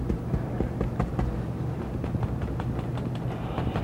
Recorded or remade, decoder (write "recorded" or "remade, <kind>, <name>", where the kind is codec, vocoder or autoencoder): recorded